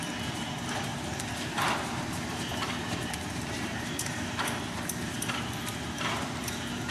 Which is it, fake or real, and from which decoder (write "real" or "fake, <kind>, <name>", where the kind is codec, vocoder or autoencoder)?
fake, vocoder, BigVGAN v2